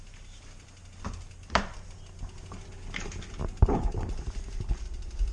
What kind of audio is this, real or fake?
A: real